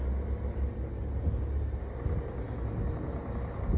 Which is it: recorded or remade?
recorded